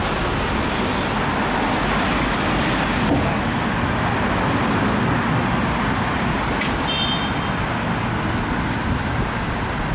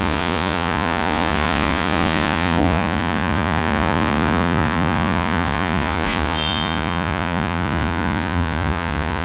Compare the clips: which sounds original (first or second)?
first